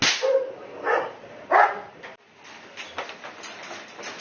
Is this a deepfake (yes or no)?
no